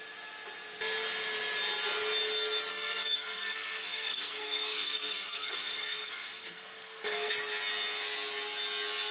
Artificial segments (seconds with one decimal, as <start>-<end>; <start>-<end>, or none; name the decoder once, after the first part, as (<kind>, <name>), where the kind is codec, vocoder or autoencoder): 2.7-7.3 (codec, SNAC)